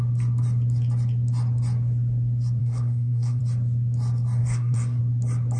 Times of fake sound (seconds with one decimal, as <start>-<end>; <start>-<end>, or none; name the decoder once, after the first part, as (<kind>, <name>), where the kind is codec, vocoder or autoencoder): 2.6-3.4 (codec, SNAC); 4.4-5.0